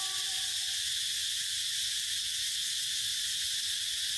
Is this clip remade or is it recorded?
remade